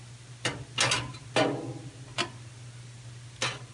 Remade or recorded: recorded